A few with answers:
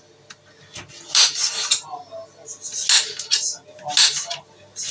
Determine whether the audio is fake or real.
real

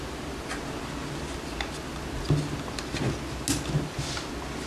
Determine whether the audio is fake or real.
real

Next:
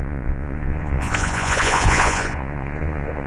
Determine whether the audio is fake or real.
fake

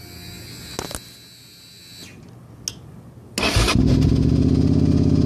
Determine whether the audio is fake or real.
real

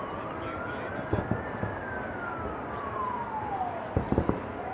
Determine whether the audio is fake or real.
real